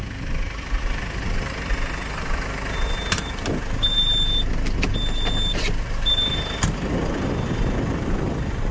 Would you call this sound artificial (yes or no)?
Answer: yes